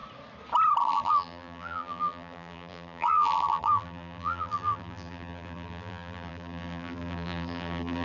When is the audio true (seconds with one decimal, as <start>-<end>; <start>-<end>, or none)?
0.0-0.8